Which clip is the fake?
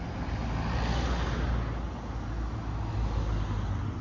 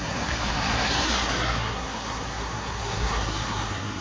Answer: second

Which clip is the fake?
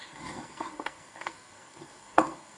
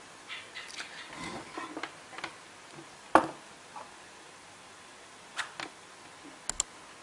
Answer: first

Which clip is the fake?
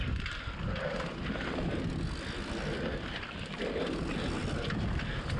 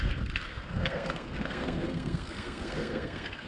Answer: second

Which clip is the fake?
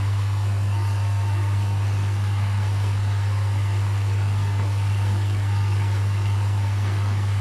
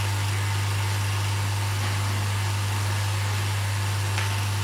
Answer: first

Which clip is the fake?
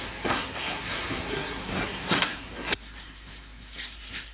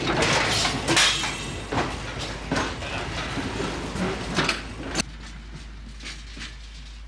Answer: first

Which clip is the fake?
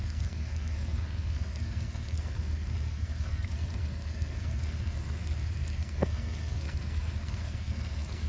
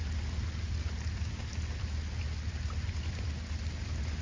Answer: first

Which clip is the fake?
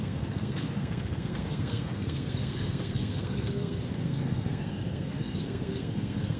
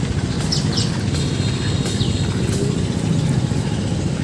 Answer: first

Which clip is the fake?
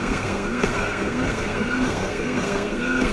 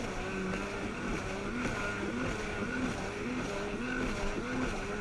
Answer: first